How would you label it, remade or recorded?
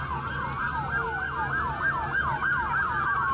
recorded